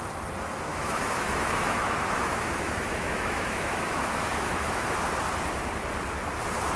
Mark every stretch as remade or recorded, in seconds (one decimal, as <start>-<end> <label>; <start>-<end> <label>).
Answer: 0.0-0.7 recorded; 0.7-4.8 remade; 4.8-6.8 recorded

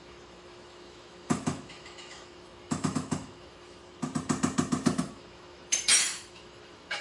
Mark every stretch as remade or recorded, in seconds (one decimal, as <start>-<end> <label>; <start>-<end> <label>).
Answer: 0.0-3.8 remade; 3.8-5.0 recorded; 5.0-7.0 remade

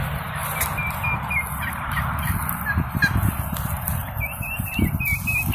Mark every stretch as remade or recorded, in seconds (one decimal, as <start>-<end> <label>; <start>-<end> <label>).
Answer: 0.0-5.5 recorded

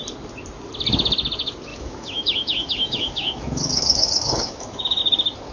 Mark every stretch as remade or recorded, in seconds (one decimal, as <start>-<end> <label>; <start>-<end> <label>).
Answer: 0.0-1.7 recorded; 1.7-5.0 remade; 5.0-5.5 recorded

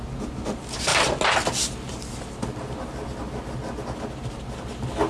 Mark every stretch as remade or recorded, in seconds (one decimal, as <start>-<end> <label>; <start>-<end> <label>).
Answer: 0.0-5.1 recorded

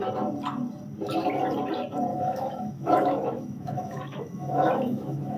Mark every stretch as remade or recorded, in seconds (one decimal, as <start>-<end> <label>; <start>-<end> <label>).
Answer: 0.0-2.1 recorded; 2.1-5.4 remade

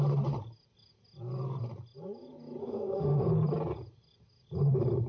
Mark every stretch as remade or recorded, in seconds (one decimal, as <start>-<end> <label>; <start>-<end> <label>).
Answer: 0.0-2.6 recorded; 2.6-3.2 remade; 3.2-5.1 recorded

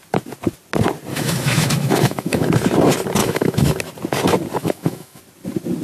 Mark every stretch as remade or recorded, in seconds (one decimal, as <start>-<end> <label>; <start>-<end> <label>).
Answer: 0.0-1.1 recorded; 1.1-2.5 remade; 2.5-3.2 recorded; 3.2-3.8 remade; 3.8-4.6 recorded; 4.6-5.2 remade; 5.2-5.8 recorded